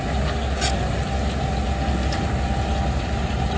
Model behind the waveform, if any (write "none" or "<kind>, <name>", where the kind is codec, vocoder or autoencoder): none